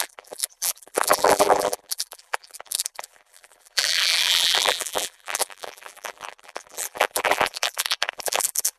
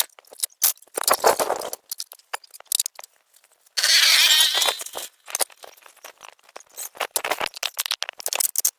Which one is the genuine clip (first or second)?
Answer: second